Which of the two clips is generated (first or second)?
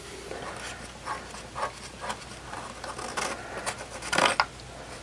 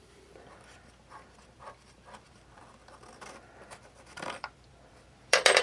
second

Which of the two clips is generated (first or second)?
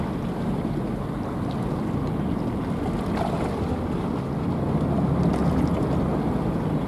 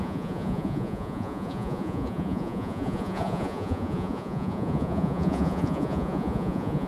second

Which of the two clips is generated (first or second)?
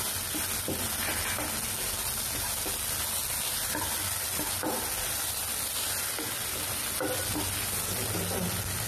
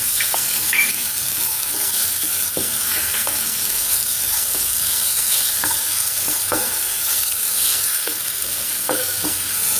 second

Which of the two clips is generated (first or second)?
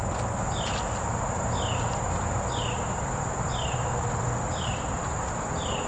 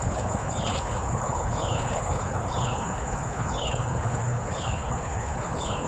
second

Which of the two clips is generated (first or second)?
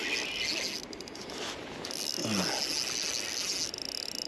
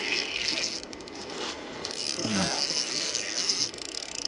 second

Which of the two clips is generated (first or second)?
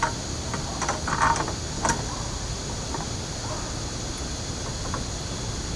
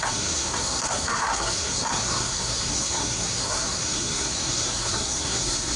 second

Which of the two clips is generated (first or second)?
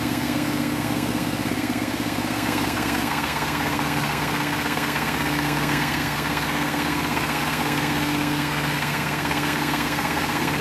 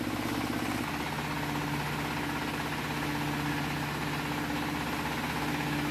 first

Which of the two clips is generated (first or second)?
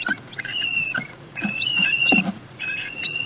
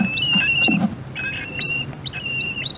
first